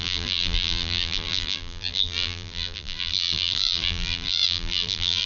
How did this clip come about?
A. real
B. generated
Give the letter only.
B